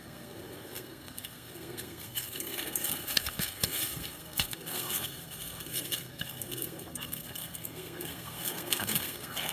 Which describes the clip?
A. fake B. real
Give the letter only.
A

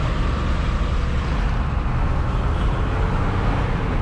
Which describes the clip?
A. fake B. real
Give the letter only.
B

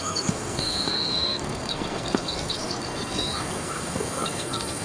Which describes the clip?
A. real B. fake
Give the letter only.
B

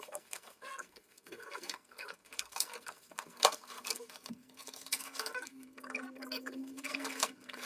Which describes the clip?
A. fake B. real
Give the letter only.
A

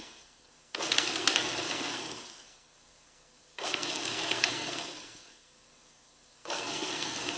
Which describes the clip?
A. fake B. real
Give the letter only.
A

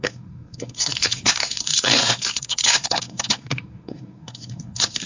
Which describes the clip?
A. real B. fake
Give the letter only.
B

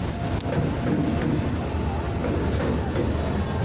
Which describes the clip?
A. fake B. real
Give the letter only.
B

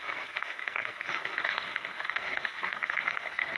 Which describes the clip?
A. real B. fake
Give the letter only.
B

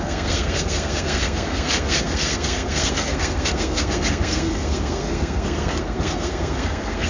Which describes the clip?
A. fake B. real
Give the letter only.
A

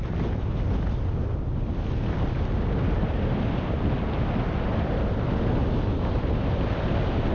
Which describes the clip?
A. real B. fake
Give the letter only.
A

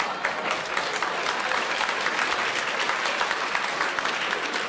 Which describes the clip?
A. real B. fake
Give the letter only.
A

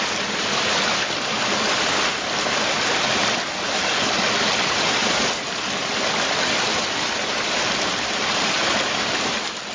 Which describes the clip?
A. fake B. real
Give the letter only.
B